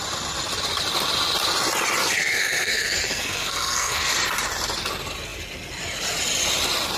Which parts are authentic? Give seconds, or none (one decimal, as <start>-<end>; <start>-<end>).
0.0-2.0; 4.1-7.0